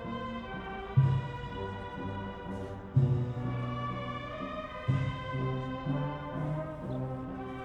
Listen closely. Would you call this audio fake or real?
real